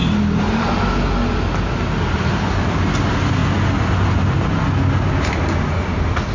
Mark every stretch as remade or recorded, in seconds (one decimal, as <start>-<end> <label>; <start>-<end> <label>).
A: 0.0-6.3 recorded